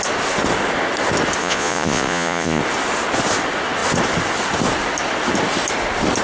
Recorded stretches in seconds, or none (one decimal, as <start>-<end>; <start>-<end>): 0.0-1.4; 2.6-6.2